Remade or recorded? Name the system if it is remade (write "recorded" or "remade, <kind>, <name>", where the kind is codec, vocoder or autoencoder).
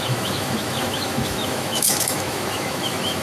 remade, autoencoder, DAC-VAE